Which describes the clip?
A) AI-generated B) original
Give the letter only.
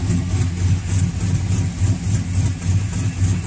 B